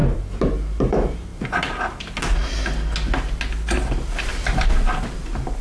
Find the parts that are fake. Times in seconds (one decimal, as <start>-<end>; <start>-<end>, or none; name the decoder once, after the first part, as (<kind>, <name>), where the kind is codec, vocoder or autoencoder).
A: none

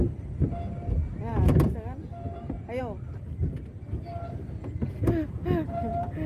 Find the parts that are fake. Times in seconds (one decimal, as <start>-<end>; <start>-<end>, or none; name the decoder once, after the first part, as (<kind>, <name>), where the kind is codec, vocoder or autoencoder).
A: none

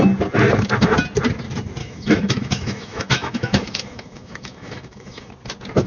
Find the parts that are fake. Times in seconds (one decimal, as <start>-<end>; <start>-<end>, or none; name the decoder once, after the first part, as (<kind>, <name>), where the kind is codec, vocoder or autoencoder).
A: 1.8-5.3 (autoencoder, DAC-VAE)

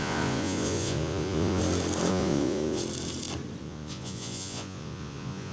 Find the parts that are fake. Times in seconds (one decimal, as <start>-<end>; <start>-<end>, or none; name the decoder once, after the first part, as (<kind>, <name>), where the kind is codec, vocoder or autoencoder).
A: 0.0-1.6 (vocoder, Vocos); 2.1-2.8; 3.6-5.5

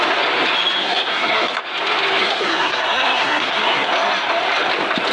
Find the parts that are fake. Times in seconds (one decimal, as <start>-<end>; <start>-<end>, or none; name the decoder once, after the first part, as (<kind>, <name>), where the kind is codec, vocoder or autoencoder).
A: 0.8-1.6 (codec, SNAC); 2.2-3.9

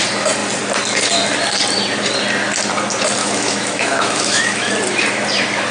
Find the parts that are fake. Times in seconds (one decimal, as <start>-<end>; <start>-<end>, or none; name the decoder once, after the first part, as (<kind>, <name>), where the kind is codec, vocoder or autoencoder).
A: 3.2-4.7 (autoencoder, DAC-VAE)

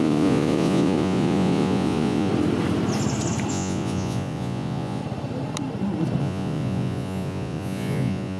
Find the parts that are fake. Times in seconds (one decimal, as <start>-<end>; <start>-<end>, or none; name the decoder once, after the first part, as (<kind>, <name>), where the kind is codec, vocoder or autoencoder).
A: 0.0-2.3 (vocoder, Vocos); 3.5-5.0; 6.2-8.4

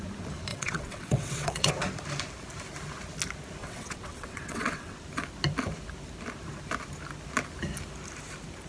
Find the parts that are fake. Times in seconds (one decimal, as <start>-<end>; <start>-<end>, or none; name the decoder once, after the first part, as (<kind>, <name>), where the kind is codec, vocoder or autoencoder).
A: 0.5-1.7 (vocoder, WaveNeXt); 3.6-5.0